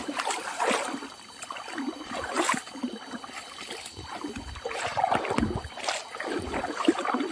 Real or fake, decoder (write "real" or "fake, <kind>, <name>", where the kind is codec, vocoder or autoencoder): real